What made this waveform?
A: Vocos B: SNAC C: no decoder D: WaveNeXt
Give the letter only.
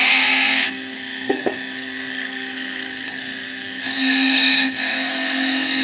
B